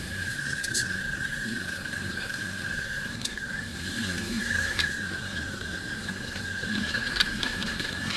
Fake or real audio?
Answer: fake